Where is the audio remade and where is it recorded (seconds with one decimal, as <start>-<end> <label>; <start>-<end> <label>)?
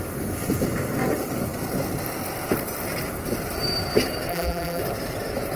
0.0-4.3 recorded; 4.3-4.8 remade; 4.8-5.6 recorded